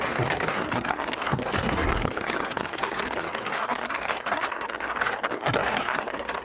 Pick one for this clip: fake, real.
fake